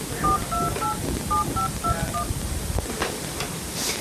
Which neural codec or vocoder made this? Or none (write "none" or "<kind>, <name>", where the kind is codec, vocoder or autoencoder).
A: none